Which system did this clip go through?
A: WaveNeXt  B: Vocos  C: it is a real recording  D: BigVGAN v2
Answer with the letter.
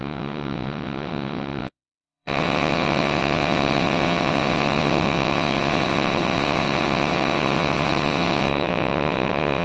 A